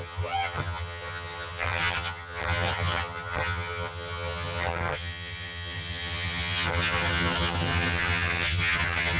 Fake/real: fake